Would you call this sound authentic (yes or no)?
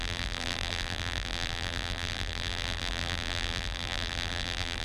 no